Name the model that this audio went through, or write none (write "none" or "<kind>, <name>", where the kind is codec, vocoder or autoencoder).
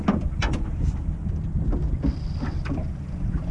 none